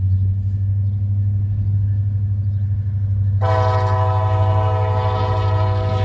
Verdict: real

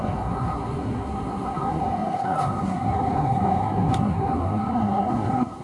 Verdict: fake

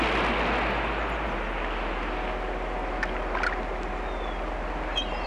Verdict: real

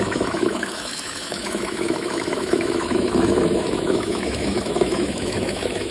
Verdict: fake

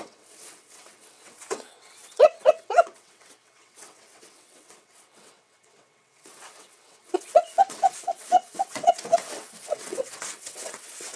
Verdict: fake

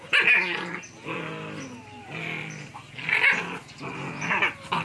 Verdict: real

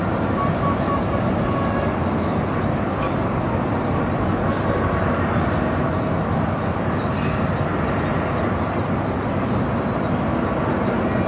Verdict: real